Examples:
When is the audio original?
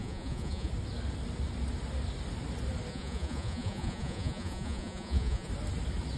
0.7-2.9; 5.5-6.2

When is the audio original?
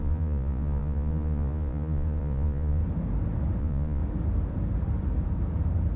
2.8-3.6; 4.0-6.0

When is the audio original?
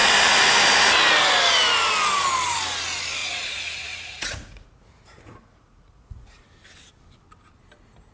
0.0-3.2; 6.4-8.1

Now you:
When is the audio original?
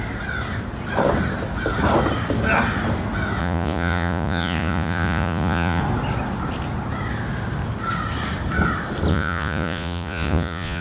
0.0-3.4; 5.8-9.1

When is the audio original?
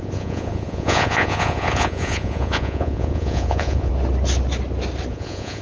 3.9-5.1